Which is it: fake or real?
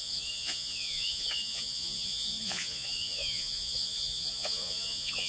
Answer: fake